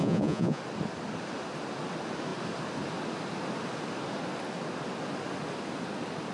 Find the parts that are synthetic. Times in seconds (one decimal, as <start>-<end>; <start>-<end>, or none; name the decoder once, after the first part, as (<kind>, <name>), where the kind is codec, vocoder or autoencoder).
0.0-0.6 (vocoder, Vocos)